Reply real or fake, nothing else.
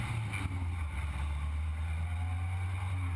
real